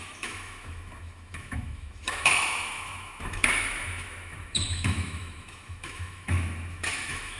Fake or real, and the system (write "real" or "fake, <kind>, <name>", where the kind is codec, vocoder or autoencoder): fake, autoencoder, DAC-VAE